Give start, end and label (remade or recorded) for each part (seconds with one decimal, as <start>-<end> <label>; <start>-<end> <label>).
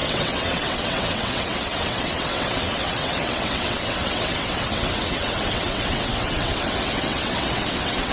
0.0-8.1 remade